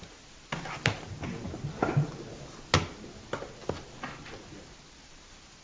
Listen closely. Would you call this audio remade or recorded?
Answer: recorded